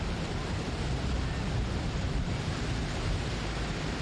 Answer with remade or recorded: remade